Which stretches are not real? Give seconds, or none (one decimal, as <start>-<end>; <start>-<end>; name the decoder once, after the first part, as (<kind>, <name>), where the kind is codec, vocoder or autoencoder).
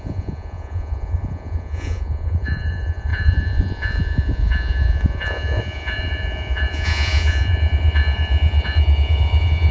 0.0-9.7 (vocoder, Vocos)